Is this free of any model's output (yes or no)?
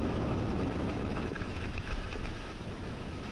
no